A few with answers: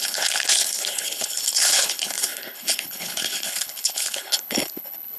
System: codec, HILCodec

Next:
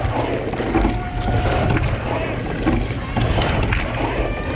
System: none